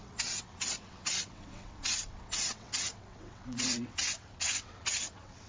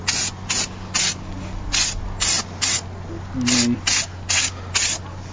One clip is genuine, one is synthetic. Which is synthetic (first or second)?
first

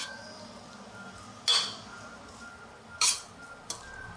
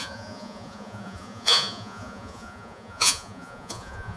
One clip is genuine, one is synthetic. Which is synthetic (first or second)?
second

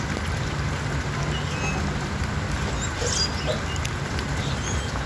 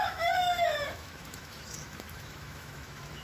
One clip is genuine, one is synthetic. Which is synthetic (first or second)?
second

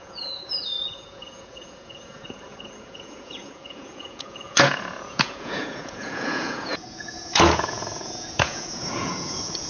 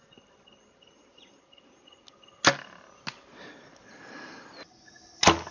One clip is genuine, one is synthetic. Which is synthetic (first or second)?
first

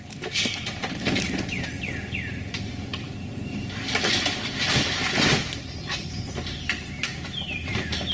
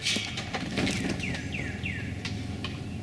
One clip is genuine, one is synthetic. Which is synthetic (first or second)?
first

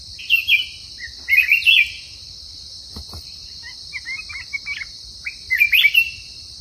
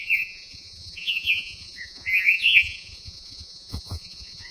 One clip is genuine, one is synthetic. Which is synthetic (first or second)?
second